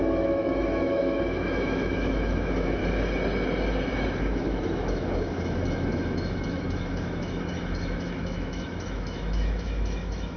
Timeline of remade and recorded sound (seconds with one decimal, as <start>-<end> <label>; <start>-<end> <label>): 0.0-2.8 remade; 2.8-4.2 recorded; 4.2-10.4 remade